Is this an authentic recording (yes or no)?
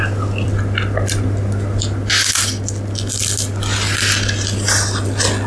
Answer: yes